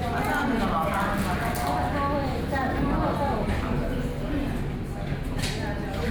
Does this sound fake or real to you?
real